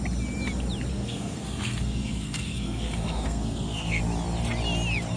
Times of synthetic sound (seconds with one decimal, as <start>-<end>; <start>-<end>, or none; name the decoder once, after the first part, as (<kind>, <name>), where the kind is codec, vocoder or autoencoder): 0.9-4.0 (codec, SNAC)